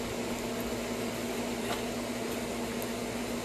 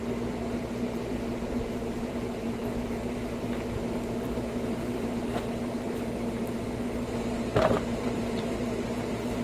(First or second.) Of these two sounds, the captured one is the first